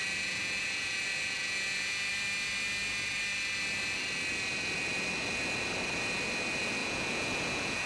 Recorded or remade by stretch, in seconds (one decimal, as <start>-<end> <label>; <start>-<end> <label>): 0.0-2.1 remade; 2.1-6.8 recorded; 6.8-7.8 remade